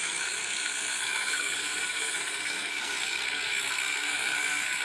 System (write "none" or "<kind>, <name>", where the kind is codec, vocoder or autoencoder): codec, SNAC